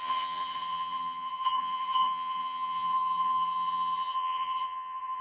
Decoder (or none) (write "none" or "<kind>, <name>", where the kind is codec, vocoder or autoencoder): vocoder, HiFi-GAN